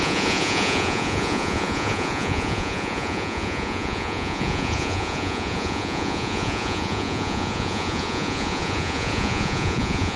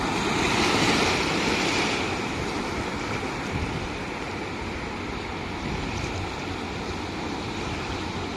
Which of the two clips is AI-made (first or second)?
first